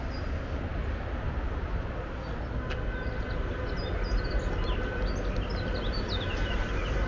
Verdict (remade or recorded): recorded